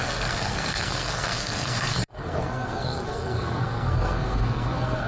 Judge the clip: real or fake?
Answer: fake